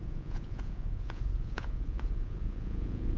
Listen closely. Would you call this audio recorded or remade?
remade